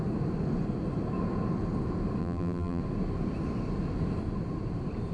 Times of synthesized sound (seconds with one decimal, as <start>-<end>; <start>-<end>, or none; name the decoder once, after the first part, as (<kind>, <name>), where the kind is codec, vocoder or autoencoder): 2.2-2.8 (vocoder, BigVGAN v2)